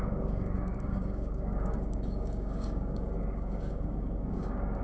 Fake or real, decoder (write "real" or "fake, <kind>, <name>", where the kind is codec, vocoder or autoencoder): fake, codec, DAC